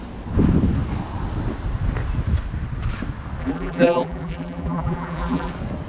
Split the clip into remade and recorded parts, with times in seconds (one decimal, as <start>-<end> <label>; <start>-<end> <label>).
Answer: 0.0-3.4 recorded; 3.4-5.5 remade; 5.5-5.9 recorded